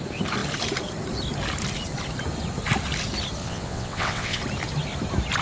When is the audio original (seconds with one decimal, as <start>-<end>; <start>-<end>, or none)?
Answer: 0.0-3.4; 4.4-5.4